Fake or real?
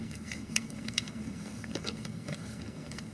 fake